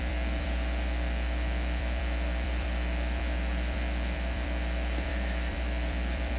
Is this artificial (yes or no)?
yes